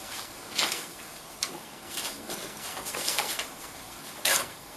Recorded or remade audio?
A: remade